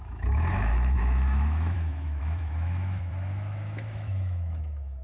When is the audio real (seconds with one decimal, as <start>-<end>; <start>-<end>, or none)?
none

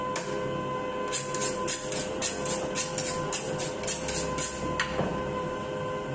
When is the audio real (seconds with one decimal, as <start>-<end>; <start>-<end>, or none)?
0.0-6.1